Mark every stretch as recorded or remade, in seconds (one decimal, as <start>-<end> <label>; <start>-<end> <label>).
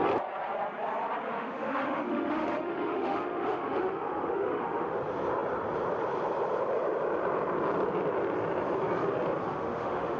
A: 0.0-1.3 recorded; 1.3-5.0 remade; 5.0-9.5 recorded; 9.5-10.2 remade